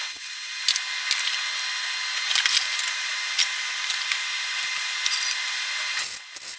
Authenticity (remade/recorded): recorded